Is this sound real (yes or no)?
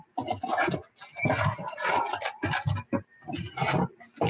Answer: yes